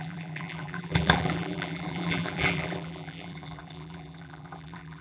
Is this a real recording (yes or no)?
no